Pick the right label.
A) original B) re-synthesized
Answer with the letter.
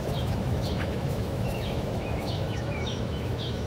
B